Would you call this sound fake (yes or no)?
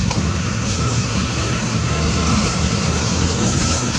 yes